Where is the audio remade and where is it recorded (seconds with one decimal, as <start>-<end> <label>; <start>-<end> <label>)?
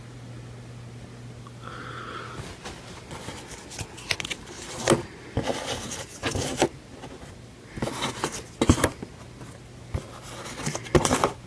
0.0-11.5 recorded